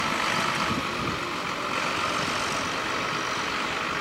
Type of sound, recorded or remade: recorded